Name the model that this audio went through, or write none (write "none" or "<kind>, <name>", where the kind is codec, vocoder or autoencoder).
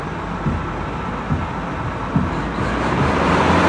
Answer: none